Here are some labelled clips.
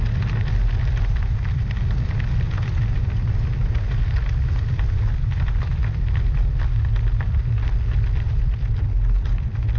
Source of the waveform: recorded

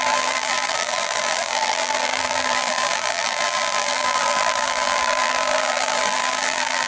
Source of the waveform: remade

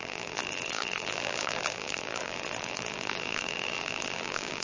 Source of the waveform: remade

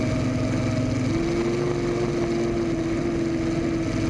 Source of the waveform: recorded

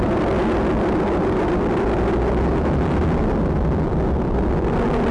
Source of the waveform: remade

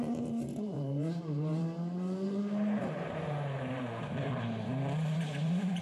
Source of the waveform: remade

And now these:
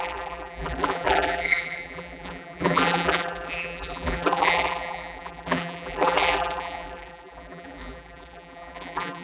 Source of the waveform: remade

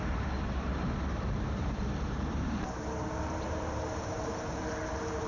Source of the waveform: remade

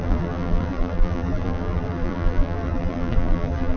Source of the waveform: remade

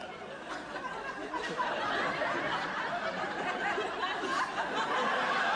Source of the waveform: remade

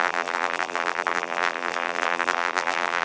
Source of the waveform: remade